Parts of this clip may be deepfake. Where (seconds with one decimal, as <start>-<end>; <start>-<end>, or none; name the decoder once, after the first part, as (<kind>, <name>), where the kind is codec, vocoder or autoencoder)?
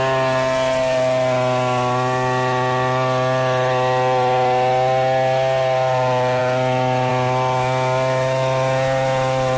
none